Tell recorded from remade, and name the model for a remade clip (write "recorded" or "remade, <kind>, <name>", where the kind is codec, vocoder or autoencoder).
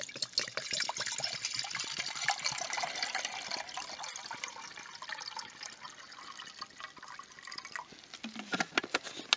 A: recorded